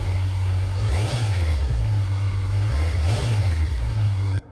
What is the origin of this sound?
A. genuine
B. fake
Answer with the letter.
B